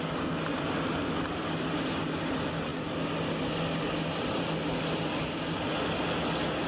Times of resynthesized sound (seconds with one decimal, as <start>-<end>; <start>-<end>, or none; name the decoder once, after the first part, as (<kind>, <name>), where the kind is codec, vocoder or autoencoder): none

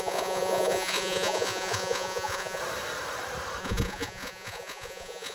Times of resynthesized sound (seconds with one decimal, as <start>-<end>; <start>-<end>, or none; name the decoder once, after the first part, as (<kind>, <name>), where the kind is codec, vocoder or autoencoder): 0.0-2.6 (vocoder, Vocos); 3.6-5.3

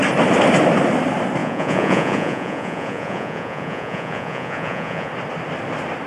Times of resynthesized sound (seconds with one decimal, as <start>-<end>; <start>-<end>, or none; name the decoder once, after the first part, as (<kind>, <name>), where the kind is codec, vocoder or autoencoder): 1.4-5.1 (vocoder, Vocos)